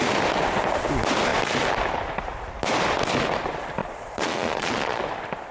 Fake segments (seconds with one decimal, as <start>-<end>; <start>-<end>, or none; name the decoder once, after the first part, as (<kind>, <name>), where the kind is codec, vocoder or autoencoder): 3.8-5.0 (vocoder, Vocos)